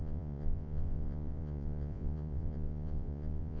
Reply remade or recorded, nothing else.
remade